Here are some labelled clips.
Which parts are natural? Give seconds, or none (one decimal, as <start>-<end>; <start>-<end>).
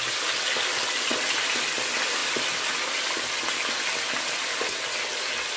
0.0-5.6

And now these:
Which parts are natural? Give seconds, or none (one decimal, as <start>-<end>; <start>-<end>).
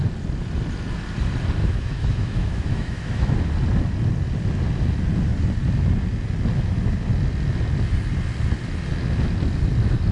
0.0-1.6; 3.5-10.1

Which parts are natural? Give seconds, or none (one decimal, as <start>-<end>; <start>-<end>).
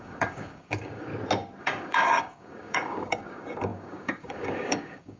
1.1-1.6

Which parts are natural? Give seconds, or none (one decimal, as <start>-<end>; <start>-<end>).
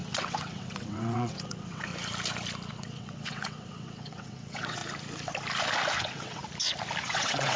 1.9-2.7; 4.8-6.0; 6.4-7.0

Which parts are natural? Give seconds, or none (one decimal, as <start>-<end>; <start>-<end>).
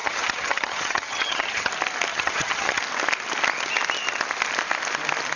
1.7-2.1; 2.8-5.4